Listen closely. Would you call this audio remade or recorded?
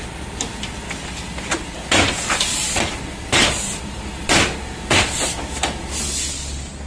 recorded